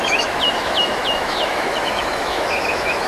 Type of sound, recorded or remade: remade